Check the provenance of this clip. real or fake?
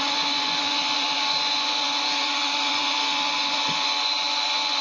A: fake